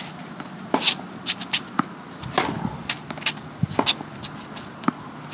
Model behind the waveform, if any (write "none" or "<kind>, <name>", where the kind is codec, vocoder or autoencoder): none